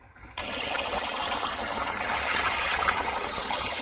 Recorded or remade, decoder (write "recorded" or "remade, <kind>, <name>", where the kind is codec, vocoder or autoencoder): remade, vocoder, HiFi-GAN